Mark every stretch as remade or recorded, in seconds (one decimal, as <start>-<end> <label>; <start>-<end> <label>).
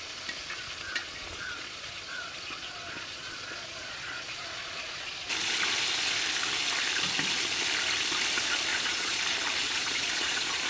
0.0-1.0 recorded; 1.0-5.1 remade; 5.1-8.7 recorded; 8.7-9.2 remade; 9.2-9.6 recorded; 9.6-10.7 remade